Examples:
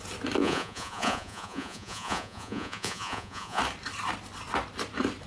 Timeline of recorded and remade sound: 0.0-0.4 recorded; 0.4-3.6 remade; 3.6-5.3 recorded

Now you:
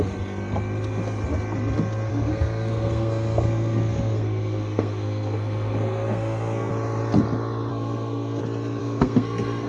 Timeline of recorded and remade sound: 0.0-2.1 recorded; 2.1-6.7 remade; 6.7-7.7 recorded; 7.7-8.4 remade; 8.4-8.8 recorded; 8.8-9.7 remade

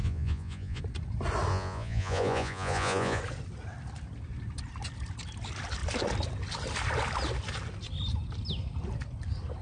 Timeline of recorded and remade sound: 0.0-0.8 remade; 0.8-1.5 recorded; 1.5-3.2 remade; 3.2-9.6 recorded

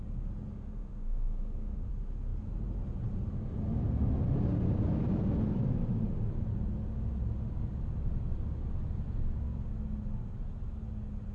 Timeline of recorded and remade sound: 0.0-0.5 recorded; 0.5-1.9 remade; 1.9-11.3 recorded

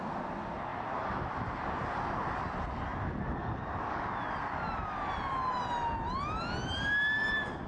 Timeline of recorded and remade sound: 0.0-7.7 recorded